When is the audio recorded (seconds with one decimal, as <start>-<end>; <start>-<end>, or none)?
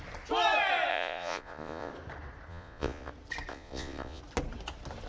0.0-0.9; 1.9-2.5; 3.1-3.5; 4.2-5.1